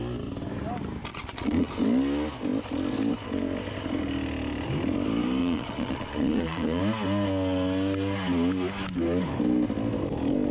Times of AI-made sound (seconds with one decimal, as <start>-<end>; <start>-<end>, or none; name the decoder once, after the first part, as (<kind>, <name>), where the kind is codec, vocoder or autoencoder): 1.1-1.7 (vocoder, Vocos); 5.4-6.8